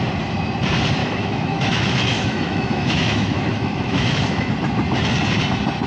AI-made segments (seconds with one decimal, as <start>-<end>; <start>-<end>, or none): 1.0-4.5